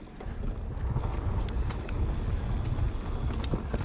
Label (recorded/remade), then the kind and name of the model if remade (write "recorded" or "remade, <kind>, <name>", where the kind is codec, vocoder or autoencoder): recorded